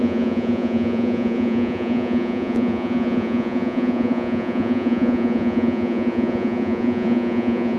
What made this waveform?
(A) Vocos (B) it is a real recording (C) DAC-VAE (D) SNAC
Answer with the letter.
A